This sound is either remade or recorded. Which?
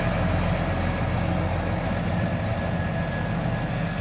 recorded